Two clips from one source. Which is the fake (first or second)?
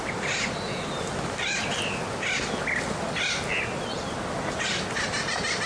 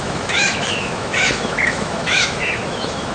second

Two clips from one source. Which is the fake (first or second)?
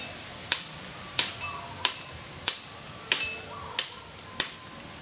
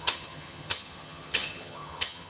second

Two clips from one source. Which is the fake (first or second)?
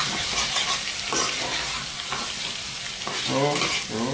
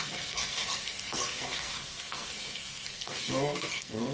second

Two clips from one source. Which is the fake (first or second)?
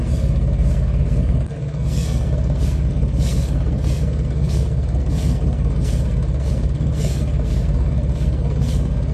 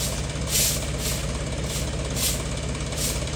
first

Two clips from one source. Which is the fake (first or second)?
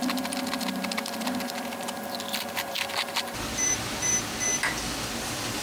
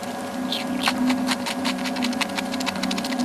first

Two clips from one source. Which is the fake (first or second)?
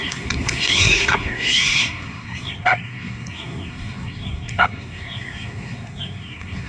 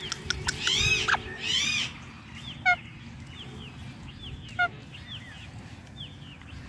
first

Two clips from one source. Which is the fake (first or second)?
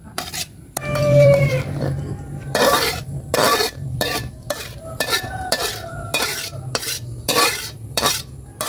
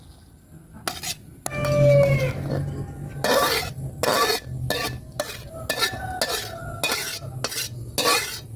first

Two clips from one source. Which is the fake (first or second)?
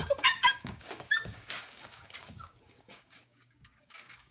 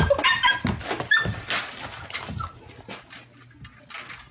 first